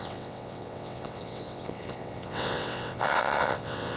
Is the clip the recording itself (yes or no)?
no